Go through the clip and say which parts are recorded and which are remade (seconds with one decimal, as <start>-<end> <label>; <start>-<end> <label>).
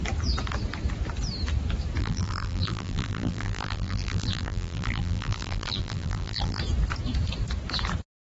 0.0-2.0 recorded; 2.0-6.6 remade; 6.6-8.2 recorded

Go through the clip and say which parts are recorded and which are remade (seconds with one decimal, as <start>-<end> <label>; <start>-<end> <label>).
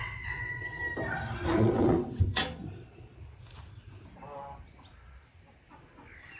0.0-0.8 remade; 0.8-1.5 recorded; 1.5-2.4 remade; 2.4-6.4 recorded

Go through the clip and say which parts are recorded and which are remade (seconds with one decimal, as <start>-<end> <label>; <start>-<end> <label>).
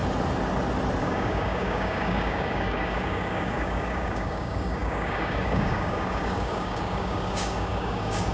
0.0-1.0 recorded; 1.0-8.3 remade